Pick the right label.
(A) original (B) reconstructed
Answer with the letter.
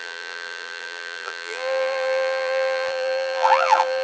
B